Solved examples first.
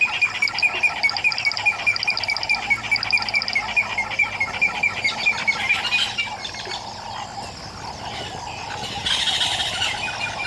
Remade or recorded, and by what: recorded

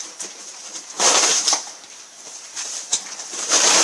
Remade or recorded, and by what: remade, vocoder, BigVGAN v2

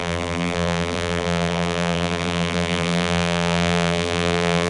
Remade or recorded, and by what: remade, vocoder, BigVGAN v2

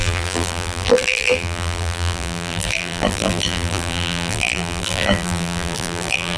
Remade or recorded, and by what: remade, vocoder, BigVGAN v2